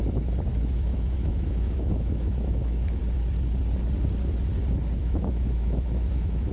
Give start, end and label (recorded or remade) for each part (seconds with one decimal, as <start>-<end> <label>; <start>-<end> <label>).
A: 0.0-0.5 recorded; 0.5-3.0 remade; 3.0-5.0 recorded; 5.0-6.5 remade